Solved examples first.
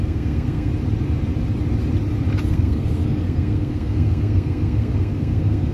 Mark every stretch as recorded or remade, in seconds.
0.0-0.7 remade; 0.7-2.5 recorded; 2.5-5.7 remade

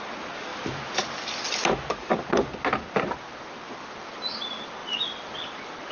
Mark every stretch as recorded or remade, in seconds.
0.0-5.9 recorded

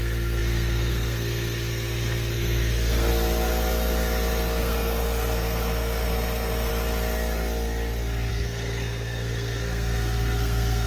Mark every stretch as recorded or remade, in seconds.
0.0-3.1 remade; 3.1-4.6 recorded; 4.6-6.7 remade; 6.7-8.3 recorded; 8.3-10.9 remade

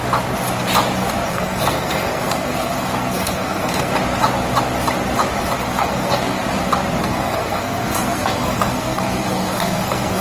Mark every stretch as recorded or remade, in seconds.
0.0-1.3 recorded; 1.3-3.9 remade; 3.9-5.6 recorded; 5.6-6.4 remade; 6.4-7.0 recorded; 7.0-10.2 remade

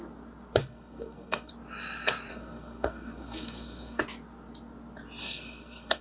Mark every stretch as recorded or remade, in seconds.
0.0-0.6 recorded; 0.6-1.5 remade; 1.5-2.3 recorded; 2.3-4.0 remade; 4.0-5.2 recorded; 5.2-6.0 remade

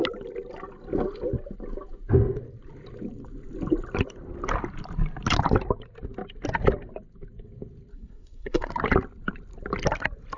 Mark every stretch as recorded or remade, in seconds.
0.0-7.9 recorded; 7.9-8.7 remade; 8.7-10.4 recorded